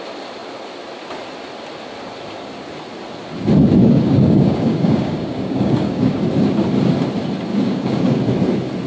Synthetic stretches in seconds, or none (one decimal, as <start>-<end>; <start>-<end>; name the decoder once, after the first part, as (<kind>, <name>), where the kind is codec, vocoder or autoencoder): 3.8-6.2 (codec, DAC); 7.5-8.2